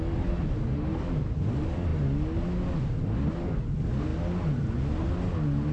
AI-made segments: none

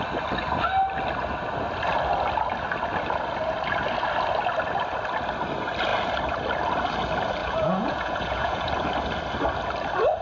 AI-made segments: 7.4-8.7 (vocoder, Vocos)

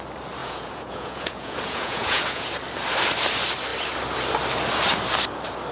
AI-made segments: 0.4-2.5 (vocoder, Vocos)

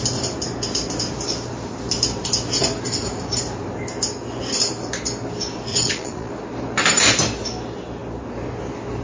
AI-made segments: 5.7-6.3 (vocoder, Vocos)

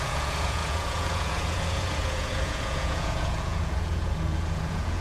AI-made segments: 0.0-5.0 (vocoder, Vocos)